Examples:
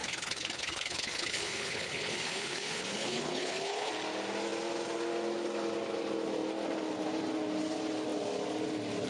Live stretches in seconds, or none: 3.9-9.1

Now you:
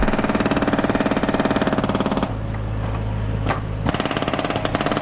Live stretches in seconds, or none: 0.0-5.0

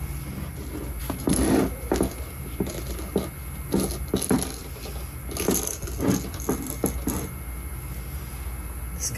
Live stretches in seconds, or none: 0.0-9.2

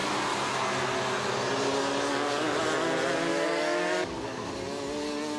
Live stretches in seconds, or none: 0.0-2.1; 2.6-3.3; 4.5-5.4

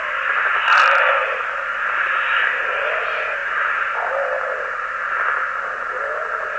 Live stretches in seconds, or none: 0.0-6.6

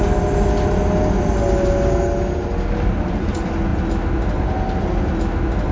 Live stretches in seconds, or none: 0.0-5.7

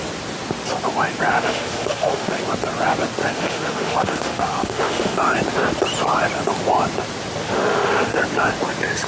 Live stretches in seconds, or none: 0.0-1.3; 2.4-3.2; 5.2-7.4; 8.2-9.1